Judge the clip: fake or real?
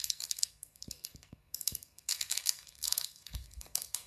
fake